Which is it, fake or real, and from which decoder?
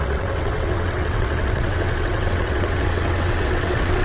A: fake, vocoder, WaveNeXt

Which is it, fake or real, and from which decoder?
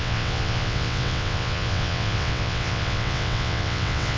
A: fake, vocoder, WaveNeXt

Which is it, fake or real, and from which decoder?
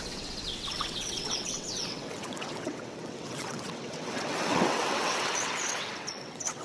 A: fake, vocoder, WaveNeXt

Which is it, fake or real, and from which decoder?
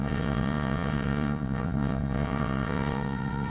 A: fake, vocoder, WaveNeXt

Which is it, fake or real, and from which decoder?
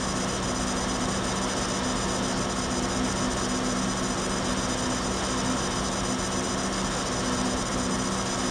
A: real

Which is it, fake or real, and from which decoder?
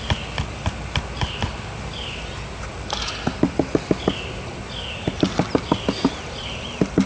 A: real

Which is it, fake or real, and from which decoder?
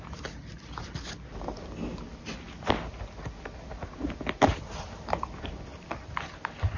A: real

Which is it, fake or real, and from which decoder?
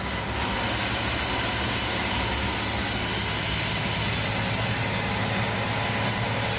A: real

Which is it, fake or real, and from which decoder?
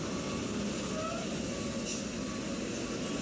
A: real